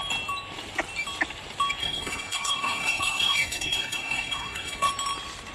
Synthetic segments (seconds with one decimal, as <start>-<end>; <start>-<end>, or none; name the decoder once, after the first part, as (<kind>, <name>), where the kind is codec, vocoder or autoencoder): 1.8-4.9 (codec, SNAC)